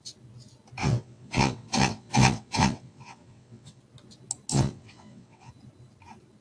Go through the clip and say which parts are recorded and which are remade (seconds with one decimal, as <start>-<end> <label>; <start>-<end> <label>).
0.0-0.8 recorded; 0.8-3.8 remade; 3.8-4.5 recorded; 4.5-5.5 remade; 5.5-6.4 recorded